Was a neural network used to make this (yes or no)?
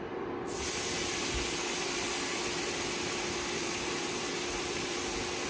no